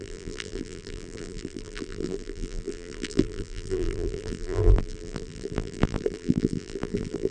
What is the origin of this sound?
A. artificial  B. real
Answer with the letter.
A